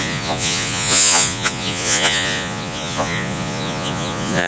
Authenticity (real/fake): fake